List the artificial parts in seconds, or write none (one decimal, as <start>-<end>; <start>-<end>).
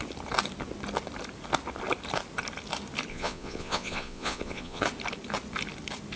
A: 3.1-4.8